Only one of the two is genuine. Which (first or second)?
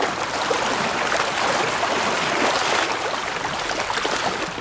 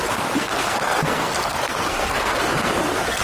first